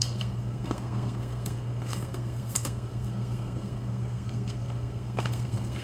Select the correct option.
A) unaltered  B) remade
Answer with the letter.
B